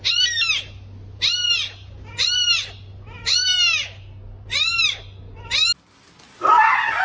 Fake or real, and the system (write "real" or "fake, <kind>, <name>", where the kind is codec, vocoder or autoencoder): real